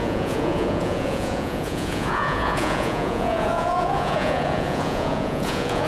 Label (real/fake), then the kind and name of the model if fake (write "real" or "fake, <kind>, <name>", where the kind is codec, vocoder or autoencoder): fake, vocoder, Vocos